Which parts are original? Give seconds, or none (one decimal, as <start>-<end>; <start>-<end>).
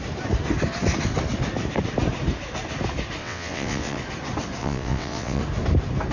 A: 0.0-3.2; 4.0-4.6; 5.4-6.1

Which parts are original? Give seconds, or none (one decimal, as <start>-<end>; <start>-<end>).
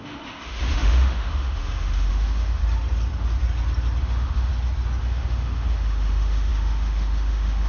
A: 2.6-4.0; 4.5-5.0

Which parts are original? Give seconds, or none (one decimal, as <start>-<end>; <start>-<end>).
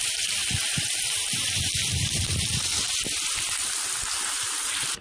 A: 0.0-5.0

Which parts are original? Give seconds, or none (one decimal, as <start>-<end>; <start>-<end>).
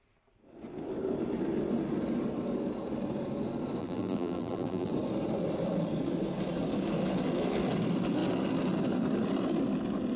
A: 0.0-3.8; 4.9-10.2